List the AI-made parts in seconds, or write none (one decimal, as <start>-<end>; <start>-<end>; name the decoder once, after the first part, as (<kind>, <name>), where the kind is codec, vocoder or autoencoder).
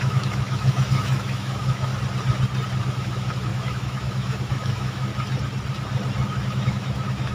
0.0-1.9 (autoencoder, DAC-VAE); 2.9-5.1; 6.3-7.3